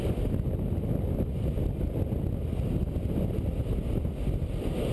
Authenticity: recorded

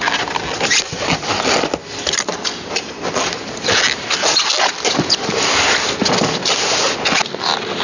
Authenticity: recorded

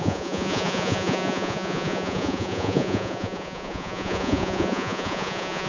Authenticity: remade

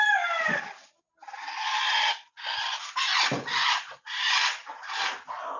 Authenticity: recorded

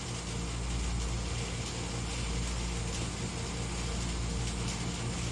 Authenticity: recorded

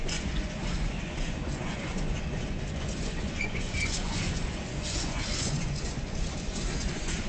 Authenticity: remade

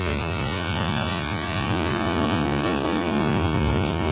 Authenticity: remade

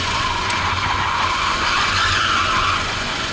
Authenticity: remade